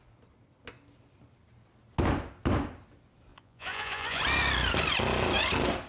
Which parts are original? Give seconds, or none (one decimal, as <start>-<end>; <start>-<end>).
0.0-3.3; 4.2-5.9